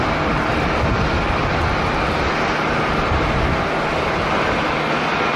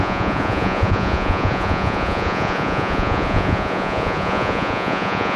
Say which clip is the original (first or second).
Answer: first